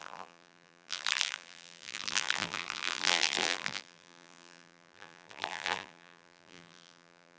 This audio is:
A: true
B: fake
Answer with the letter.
B